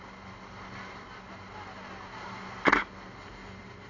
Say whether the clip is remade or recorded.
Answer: recorded